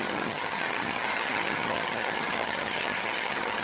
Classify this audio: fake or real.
fake